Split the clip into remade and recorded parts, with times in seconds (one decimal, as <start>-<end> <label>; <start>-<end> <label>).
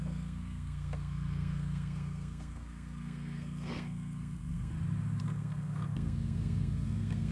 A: 0.0-4.7 remade; 4.7-5.2 recorded; 5.2-7.3 remade